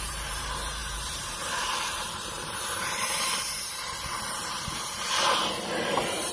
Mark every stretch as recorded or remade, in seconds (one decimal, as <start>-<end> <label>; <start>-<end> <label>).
0.0-6.3 remade